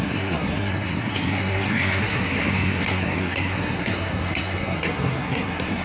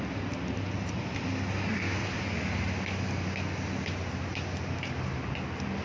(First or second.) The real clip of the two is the second